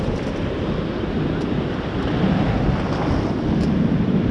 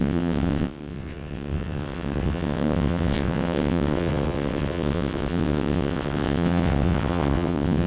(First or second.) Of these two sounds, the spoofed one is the second